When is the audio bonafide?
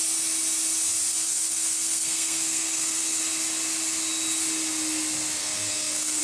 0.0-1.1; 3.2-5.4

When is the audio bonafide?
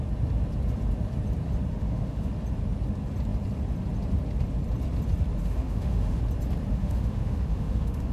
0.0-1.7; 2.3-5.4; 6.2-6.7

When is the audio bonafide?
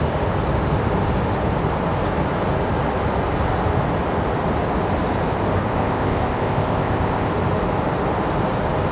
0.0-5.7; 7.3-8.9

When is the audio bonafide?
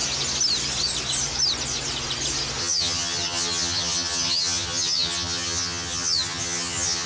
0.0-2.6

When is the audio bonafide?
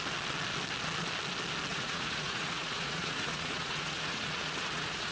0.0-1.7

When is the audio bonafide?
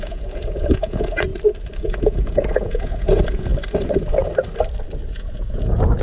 1.3-1.8; 3.5-5.1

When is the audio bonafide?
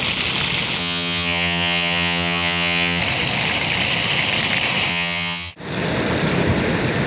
0.0-0.8; 3.0-4.9; 5.5-7.1